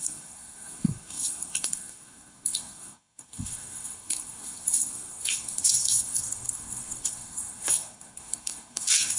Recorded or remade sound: remade